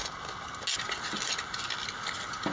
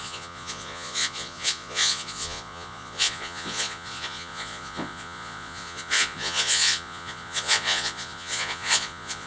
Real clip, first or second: first